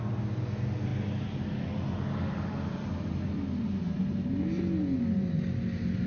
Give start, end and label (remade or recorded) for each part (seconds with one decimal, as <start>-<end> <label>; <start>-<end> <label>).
0.0-6.1 recorded